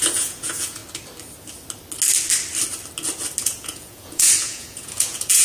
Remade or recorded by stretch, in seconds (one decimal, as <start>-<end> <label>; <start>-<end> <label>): 0.0-0.8 remade; 0.8-3.4 recorded; 3.4-5.4 remade